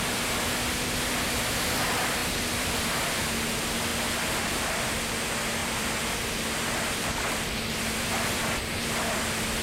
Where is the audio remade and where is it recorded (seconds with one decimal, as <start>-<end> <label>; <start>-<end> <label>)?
0.0-2.2 recorded; 2.2-2.7 remade; 2.7-5.6 recorded; 5.6-8.0 remade; 8.0-9.6 recorded